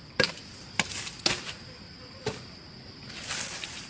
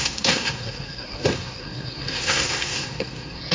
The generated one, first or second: second